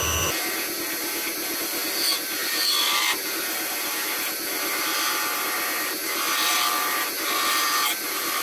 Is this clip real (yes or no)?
yes